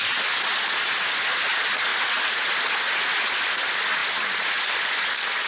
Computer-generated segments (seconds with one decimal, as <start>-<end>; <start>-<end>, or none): none